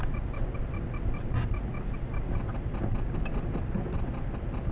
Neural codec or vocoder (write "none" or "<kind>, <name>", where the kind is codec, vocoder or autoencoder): none